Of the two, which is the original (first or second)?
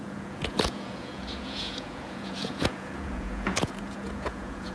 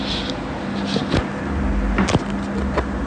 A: second